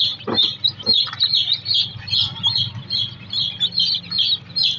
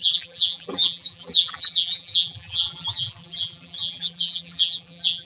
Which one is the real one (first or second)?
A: first